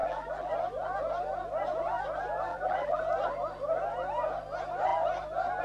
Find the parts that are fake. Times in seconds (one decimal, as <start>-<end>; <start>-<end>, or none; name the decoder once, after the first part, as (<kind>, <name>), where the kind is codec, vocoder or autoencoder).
0.0-0.5 (vocoder, BigVGAN v2); 2.5-3.0

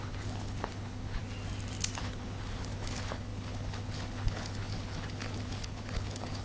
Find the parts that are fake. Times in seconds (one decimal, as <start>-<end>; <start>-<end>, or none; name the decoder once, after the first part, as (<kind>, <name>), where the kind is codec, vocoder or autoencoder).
0.0-1.2 (codec, HILCodec); 2.0-6.4

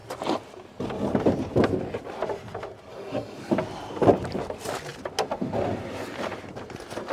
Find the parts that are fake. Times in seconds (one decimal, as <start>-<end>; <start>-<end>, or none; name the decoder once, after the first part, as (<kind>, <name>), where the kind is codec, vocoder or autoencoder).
2.9-3.5 (codec, DAC)

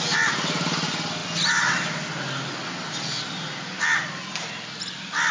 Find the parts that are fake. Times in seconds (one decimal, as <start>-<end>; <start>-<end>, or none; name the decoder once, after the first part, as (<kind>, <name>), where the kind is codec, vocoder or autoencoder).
none

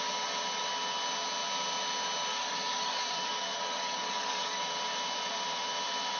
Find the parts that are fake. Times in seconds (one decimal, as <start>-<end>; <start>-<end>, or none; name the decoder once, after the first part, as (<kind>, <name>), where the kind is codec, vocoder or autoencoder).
2.3-4.6 (codec, DAC)